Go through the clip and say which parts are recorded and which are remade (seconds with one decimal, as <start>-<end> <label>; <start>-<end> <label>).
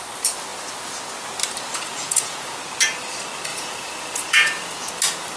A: 0.0-1.7 recorded; 1.7-2.6 remade; 2.6-3.5 recorded; 3.5-4.9 remade; 4.9-5.4 recorded